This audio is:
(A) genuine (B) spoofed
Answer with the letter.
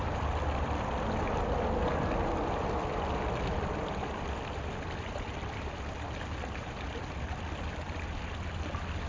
A